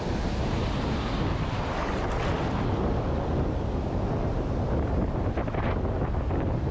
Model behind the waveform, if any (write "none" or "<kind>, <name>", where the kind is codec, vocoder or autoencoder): none